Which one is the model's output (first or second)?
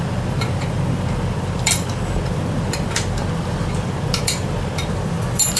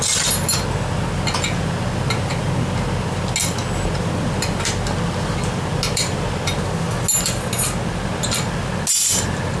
first